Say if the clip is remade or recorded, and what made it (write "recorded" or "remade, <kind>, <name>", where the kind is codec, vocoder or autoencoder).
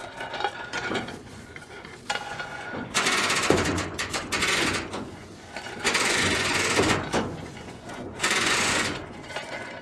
remade, vocoder, Vocos